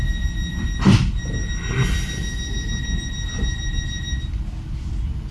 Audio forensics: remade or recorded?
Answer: recorded